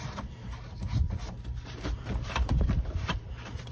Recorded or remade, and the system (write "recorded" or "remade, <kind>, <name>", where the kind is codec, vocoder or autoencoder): remade, vocoder, BigVGAN v2